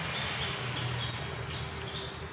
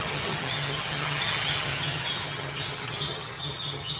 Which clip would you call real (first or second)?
first